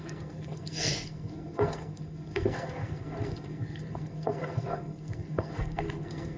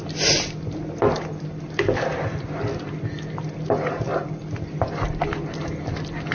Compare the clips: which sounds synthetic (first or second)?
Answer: first